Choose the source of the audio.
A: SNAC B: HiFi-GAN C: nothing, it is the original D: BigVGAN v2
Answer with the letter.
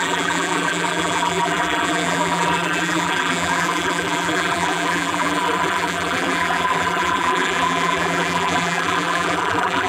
D